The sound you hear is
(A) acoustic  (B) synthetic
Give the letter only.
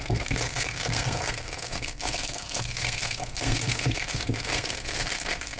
B